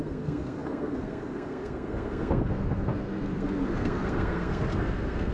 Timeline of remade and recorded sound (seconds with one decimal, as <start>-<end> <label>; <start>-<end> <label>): 0.0-5.3 remade